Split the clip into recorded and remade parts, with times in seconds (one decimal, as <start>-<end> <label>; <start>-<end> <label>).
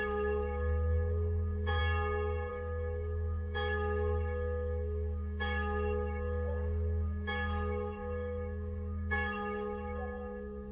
0.0-1.8 remade; 1.8-2.5 recorded; 2.5-10.7 remade